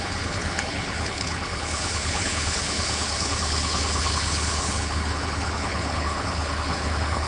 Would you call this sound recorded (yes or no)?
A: no